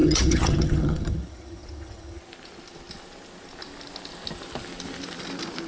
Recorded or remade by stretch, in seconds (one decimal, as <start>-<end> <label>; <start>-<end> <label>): 0.0-2.2 remade; 2.2-5.7 recorded